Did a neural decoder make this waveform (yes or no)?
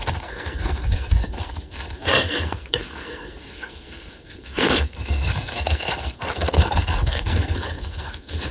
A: yes